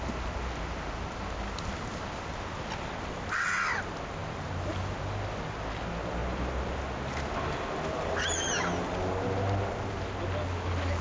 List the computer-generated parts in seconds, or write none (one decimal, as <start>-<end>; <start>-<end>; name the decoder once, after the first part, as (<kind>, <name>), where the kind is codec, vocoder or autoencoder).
none